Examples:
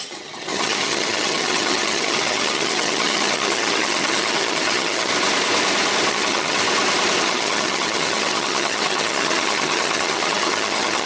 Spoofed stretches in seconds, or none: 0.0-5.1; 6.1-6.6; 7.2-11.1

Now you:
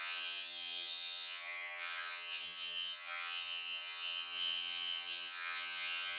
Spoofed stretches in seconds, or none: 0.0-6.2

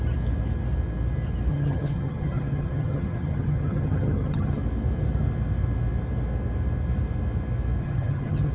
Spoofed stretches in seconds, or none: 1.5-4.6; 7.8-8.5

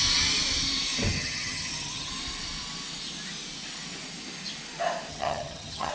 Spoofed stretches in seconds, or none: 1.2-2.1; 5.1-5.9

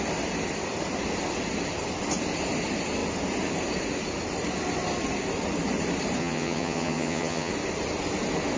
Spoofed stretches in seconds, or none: 6.2-7.5

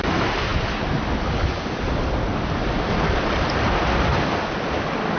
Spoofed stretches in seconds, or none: none

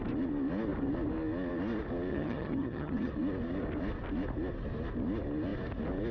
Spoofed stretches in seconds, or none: 2.1-3.1